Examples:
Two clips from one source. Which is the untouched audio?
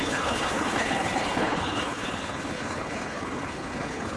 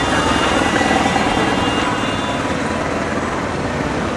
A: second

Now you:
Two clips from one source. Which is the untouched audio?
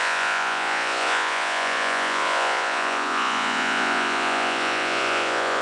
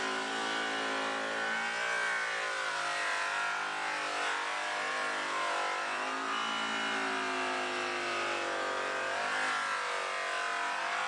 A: second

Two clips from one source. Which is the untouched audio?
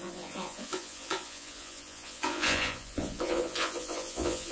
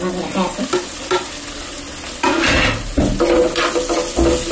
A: second